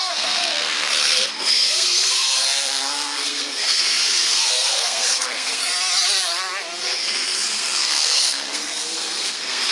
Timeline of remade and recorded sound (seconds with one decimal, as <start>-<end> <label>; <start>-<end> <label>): 0.0-5.7 remade; 5.7-6.8 recorded; 6.8-9.7 remade